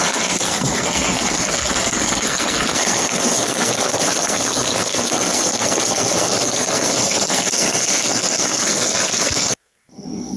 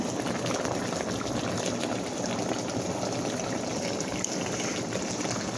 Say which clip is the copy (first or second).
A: first